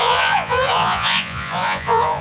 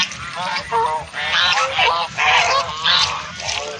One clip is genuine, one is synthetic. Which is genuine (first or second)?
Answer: second